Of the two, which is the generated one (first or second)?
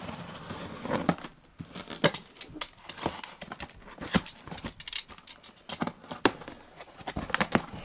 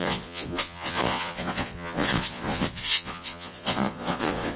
second